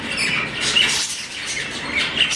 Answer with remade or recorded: recorded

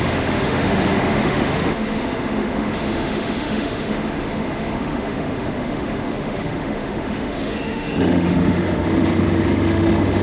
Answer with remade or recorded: remade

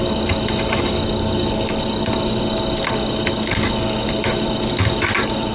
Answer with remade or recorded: recorded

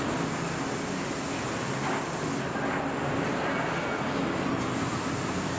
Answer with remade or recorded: recorded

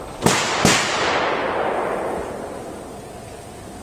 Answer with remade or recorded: recorded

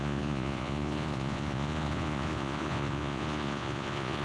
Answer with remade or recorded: remade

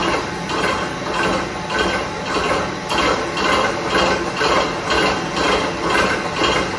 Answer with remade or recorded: recorded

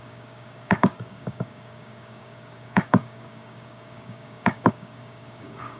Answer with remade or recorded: remade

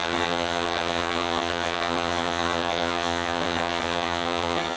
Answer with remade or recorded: remade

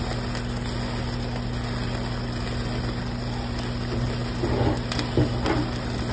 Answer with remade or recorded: recorded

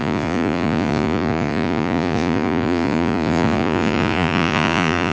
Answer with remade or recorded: remade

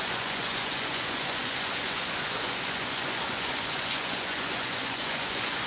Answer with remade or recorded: remade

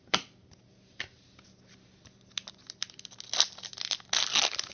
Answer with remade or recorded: recorded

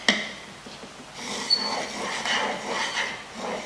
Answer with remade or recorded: recorded